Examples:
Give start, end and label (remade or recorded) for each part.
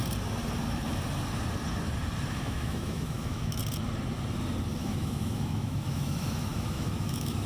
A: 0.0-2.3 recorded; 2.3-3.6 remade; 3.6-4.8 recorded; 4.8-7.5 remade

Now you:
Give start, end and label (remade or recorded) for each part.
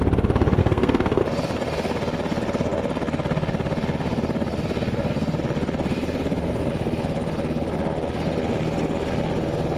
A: 0.0-0.6 recorded; 0.6-1.2 remade; 1.2-9.8 recorded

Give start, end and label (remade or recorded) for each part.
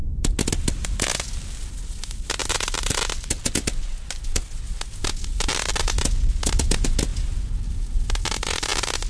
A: 0.0-2.4 recorded; 2.4-3.0 remade; 3.0-9.1 recorded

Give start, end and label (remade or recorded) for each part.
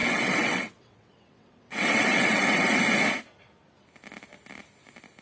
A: 0.0-2.8 remade; 2.8-5.2 recorded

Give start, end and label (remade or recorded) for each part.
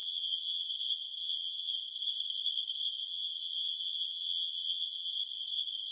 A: 0.0-0.7 remade; 0.7-1.2 recorded; 1.2-1.7 remade; 1.7-3.1 recorded; 3.1-5.1 remade; 5.1-5.9 recorded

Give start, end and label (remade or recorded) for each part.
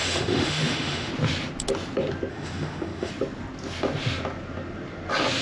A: 0.0-1.1 remade; 1.1-2.3 recorded; 2.3-3.1 remade; 3.1-5.4 recorded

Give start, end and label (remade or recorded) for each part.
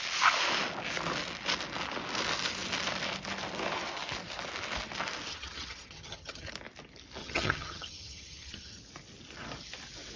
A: 0.0-5.3 recorded; 5.3-6.5 remade; 6.5-7.2 recorded; 7.2-8.8 remade; 8.8-10.2 recorded